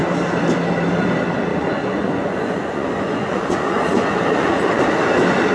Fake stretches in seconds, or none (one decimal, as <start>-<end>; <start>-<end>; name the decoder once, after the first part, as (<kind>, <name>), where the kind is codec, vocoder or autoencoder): 1.5-4.8 (vocoder, Vocos)